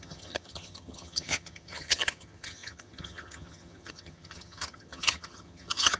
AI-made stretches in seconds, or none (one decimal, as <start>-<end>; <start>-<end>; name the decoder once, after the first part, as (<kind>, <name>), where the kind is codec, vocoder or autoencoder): 0.0-6.0 (vocoder, HiFi-GAN)